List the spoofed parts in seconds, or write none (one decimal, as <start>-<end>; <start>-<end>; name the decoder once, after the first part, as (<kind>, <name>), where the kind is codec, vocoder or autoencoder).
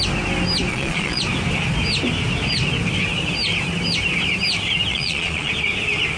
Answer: 0.7-1.2 (vocoder, Vocos); 4.9-5.5